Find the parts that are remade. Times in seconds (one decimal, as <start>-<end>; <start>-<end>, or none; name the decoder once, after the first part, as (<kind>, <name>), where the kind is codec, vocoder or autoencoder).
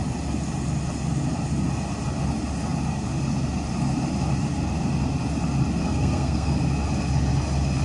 5.8-6.5 (codec, SNAC)